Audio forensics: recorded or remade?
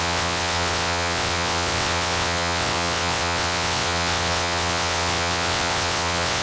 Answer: remade